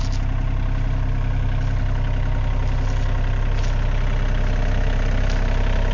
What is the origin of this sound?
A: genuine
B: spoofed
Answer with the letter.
A